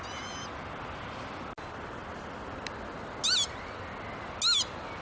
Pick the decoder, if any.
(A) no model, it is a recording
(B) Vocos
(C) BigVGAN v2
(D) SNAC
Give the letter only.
A